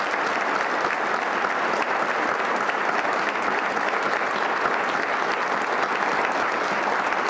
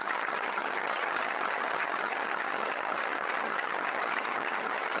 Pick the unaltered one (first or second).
first